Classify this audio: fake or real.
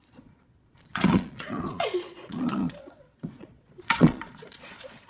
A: fake